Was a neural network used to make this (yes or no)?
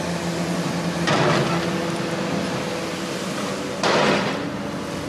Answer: no